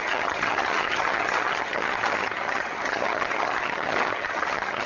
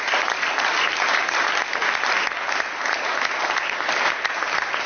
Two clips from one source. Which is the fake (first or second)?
first